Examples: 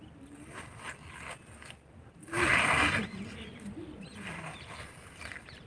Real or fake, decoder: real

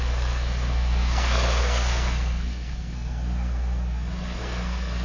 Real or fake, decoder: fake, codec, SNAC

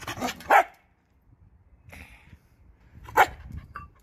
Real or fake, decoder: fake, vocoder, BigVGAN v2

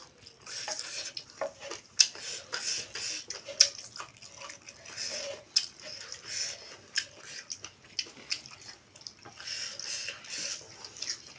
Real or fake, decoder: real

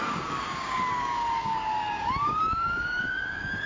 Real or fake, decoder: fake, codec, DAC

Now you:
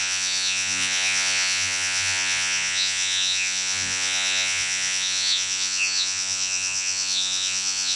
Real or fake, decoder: fake, vocoder, Vocos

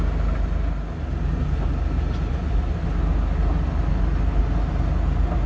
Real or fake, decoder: real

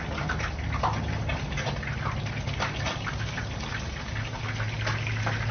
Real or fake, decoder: real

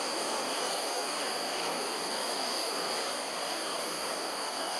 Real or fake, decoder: fake, codec, DAC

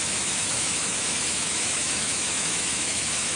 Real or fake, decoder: fake, autoencoder, DAC-VAE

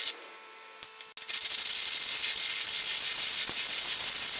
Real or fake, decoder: real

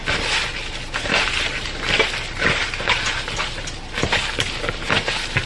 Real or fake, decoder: real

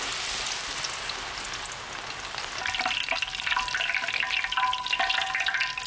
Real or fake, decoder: real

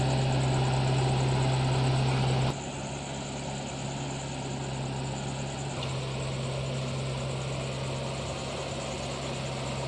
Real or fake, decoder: real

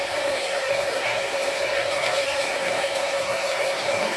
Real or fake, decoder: fake, codec, SNAC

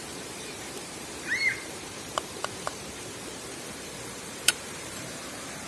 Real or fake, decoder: fake, vocoder, BigVGAN v2